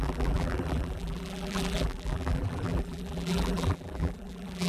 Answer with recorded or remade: remade